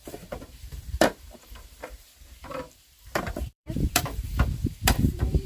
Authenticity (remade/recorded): remade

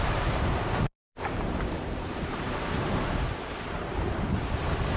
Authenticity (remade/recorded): remade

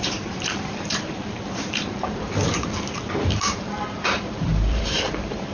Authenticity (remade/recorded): remade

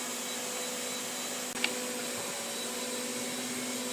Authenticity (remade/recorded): recorded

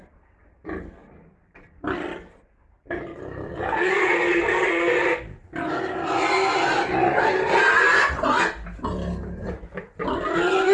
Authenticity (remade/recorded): recorded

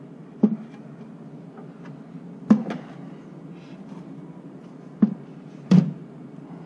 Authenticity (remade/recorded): recorded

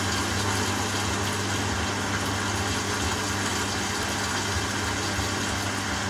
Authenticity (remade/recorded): recorded